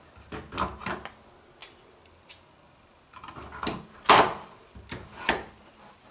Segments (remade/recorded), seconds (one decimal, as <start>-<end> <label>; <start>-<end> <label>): 0.0-6.1 recorded